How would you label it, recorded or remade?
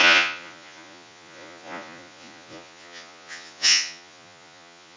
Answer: remade